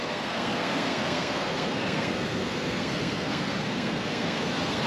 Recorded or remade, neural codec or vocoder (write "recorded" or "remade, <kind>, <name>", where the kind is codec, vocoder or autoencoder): remade, codec, SNAC